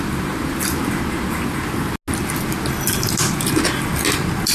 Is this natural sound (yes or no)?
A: yes